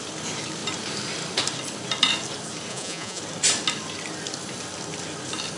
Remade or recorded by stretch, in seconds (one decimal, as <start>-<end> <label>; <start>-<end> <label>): 0.0-2.7 recorded; 2.7-3.2 remade; 3.2-5.6 recorded